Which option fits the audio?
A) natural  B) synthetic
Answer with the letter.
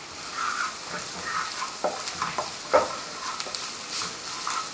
A